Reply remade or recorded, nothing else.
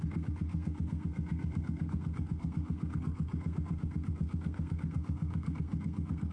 remade